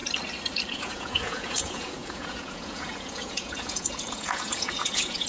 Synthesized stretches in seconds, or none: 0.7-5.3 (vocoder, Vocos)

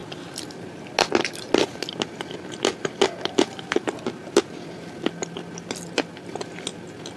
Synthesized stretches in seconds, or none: none

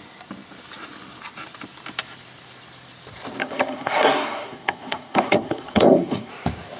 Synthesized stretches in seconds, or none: 3.4-6.3 (codec, SNAC)

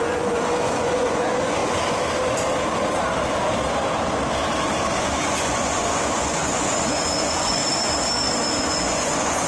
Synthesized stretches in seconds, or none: 0.0-1.6 (vocoder, Vocos); 5.0-7.6; 8.6-9.5

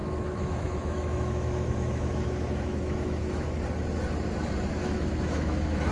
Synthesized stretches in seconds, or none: 0.0-3.5 (autoencoder, DAC-VAE); 4.8-5.9

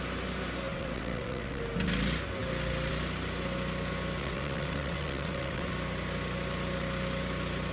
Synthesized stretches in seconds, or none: 0.7-1.6 (vocoder, WaveNeXt); 4.2-5.7

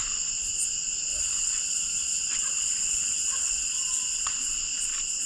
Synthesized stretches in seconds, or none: 1.1-4.3 (vocoder, WaveNeXt)